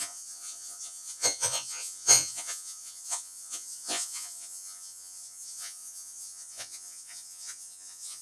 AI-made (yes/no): yes